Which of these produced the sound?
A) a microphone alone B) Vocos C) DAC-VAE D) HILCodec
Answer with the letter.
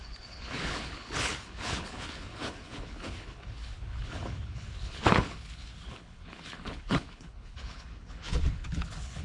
D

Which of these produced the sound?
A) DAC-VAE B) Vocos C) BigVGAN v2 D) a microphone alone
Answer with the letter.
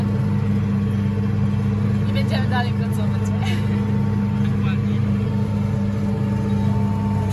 D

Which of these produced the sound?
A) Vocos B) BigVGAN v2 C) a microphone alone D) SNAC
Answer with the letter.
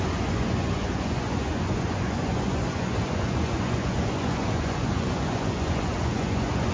A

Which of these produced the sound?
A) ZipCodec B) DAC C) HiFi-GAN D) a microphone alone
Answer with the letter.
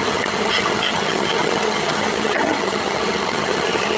C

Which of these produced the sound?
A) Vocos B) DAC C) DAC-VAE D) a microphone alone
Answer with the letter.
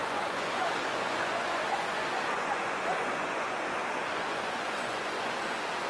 A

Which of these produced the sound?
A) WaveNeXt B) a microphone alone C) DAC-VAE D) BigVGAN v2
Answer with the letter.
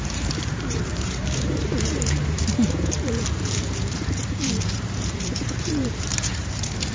D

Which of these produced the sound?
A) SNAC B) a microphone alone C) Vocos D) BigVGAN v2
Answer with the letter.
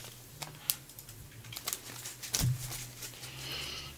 B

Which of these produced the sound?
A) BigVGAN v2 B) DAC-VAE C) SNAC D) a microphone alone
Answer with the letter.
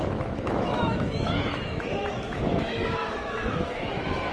B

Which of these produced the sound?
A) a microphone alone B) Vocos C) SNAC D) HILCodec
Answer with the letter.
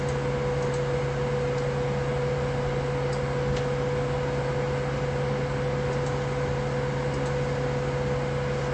A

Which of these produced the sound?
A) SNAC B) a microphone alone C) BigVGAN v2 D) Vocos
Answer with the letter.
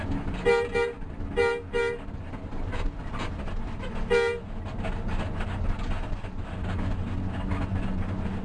B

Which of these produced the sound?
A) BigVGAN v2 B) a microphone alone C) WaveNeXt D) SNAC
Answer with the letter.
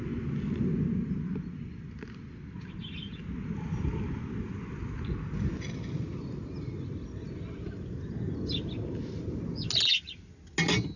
B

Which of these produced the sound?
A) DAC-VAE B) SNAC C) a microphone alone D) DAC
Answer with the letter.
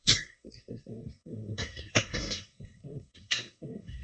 B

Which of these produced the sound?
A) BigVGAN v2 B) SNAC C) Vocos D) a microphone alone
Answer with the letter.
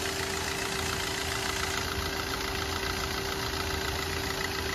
D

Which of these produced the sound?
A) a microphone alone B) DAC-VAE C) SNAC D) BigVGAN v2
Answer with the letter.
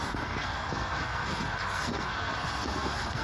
C